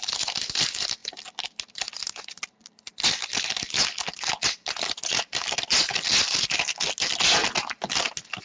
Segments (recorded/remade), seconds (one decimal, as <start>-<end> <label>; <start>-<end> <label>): 0.0-8.4 recorded